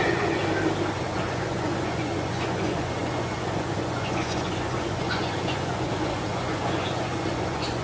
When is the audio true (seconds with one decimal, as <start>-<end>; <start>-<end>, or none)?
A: 0.4-0.9